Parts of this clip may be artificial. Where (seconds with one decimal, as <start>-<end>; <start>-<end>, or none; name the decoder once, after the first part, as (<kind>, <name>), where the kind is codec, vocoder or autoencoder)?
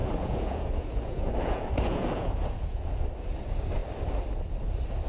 0.0-3.0 (vocoder, Vocos)